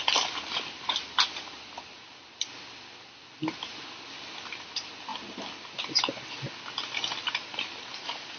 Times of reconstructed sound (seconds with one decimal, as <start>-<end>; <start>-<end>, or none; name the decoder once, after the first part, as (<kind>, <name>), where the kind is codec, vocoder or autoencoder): none